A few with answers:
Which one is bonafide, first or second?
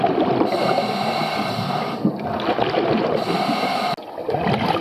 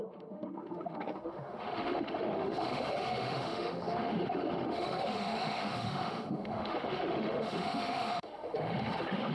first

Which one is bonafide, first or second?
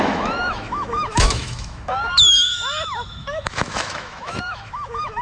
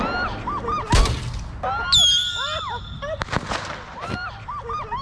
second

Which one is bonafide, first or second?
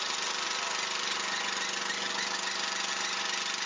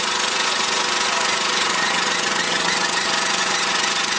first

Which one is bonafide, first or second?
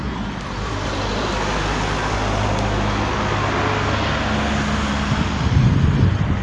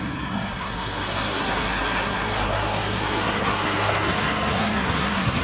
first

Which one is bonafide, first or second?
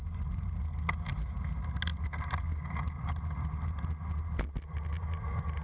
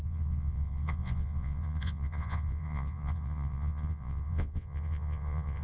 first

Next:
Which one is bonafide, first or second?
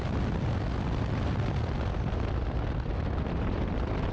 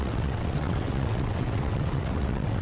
first